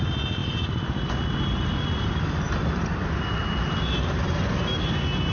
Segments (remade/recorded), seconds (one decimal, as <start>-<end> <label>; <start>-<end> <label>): 0.0-0.4 recorded; 0.4-1.1 remade; 1.1-5.3 recorded

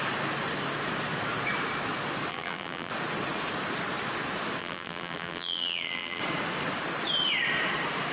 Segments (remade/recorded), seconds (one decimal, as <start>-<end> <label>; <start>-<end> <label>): 0.0-2.3 recorded; 2.3-2.9 remade; 2.9-4.6 recorded; 4.6-6.2 remade; 6.2-8.1 recorded

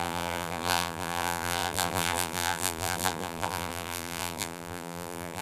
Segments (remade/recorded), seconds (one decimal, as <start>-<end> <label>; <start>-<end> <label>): 0.0-5.4 remade

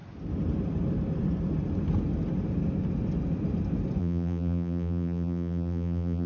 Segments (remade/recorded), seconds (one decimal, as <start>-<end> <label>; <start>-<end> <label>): 0.0-4.0 recorded; 4.0-6.3 remade

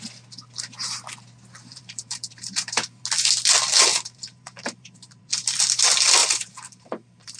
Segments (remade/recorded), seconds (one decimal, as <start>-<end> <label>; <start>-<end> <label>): 0.0-1.7 recorded; 1.7-3.0 remade; 3.0-3.9 recorded; 3.9-5.3 remade; 5.3-6.2 recorded; 6.2-7.4 remade

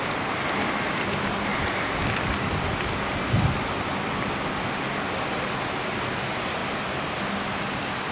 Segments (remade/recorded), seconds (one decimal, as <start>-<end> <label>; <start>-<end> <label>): 0.0-8.1 recorded

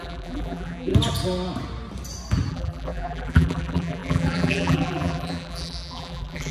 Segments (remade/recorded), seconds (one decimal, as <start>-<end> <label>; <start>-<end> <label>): 0.0-0.9 remade; 0.9-2.5 recorded; 2.5-6.5 remade

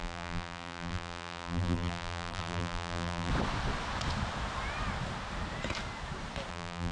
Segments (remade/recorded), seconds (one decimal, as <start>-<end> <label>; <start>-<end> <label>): 0.0-3.3 remade; 3.3-6.5 recorded; 6.5-6.9 remade